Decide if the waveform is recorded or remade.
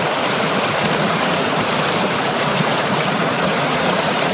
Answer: remade